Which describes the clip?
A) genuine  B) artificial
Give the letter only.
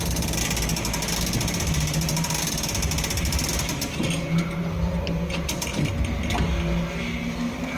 A